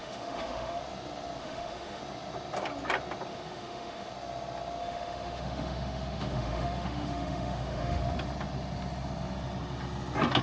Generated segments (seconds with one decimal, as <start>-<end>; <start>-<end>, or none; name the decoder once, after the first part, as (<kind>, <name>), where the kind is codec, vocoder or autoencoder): 0.0-0.8 (autoencoder, DAC-VAE); 1.4-2.0; 3.3-4.1; 4.8-8.0